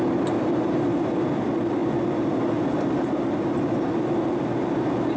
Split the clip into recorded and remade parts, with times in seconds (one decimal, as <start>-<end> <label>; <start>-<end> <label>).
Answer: 0.0-5.2 recorded